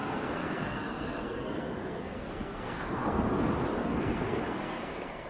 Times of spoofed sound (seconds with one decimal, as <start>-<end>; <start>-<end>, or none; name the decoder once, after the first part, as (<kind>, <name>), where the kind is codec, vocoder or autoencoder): 0.0-3.2 (codec, SNAC); 3.8-5.3